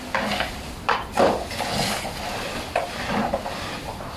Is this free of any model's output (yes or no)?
yes